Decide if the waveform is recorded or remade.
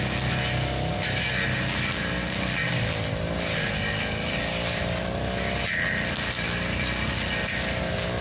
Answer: recorded